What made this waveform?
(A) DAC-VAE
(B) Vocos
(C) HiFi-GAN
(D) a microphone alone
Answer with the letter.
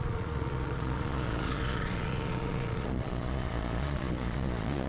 B